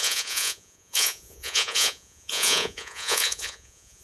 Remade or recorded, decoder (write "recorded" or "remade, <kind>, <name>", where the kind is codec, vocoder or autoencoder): remade, vocoder, Vocos